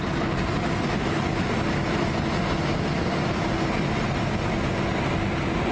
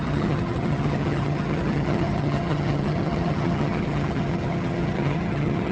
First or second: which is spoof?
second